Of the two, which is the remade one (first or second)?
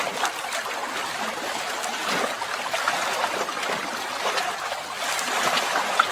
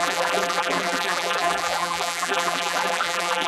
second